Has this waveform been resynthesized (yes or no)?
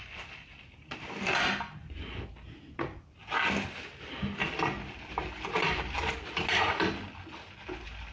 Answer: no